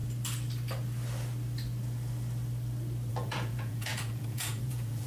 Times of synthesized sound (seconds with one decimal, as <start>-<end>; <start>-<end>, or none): 3.1-5.1

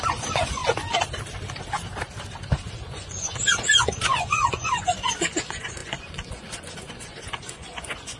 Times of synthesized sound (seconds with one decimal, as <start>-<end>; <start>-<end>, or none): 0.0-0.6; 2.7-8.2